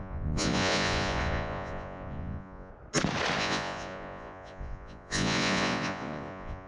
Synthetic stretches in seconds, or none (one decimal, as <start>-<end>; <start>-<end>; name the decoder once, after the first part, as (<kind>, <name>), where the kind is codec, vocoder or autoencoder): 0.0-2.7 (vocoder, Vocos); 3.4-6.7

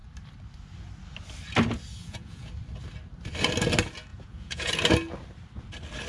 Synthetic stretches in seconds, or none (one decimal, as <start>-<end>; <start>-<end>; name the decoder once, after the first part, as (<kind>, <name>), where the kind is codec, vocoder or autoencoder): 2.0-2.5 (vocoder, Vocos); 4.1-4.7

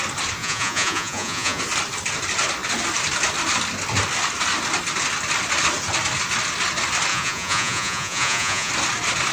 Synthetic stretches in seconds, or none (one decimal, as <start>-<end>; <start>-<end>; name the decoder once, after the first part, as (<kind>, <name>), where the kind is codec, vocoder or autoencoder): 0.4-1.6 (vocoder, Vocos); 7.1-8.7

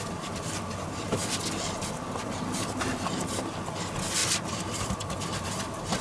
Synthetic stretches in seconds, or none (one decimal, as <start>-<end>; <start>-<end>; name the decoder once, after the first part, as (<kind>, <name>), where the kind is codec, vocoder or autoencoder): none